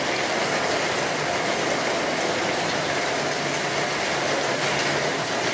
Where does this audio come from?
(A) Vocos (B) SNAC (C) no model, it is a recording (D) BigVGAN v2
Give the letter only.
C